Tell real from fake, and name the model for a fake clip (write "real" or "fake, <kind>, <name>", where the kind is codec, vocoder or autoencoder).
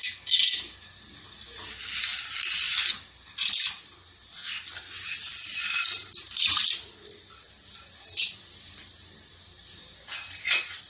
real